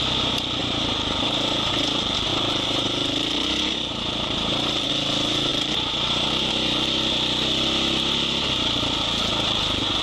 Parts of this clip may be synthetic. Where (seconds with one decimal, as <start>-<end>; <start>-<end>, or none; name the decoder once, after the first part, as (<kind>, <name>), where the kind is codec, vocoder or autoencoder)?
0.6-1.7 (vocoder, BigVGAN v2); 2.3-4.9; 5.5-6.5